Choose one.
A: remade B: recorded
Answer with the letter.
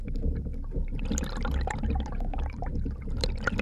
B